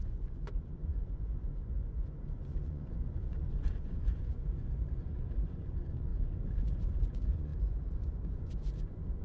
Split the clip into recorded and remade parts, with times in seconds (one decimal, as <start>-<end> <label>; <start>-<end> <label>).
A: 0.0-9.2 remade